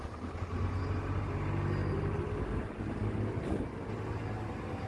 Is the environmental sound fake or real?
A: real